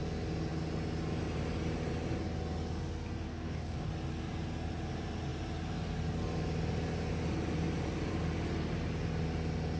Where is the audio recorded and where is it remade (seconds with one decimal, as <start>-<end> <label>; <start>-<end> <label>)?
0.0-3.3 recorded; 3.3-3.9 remade; 3.9-9.8 recorded